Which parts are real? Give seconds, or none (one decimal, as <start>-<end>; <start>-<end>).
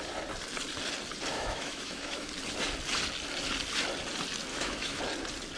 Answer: 0.0-1.3; 2.3-4.5; 5.0-5.6